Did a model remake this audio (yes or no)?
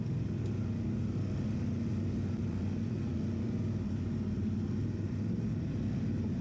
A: no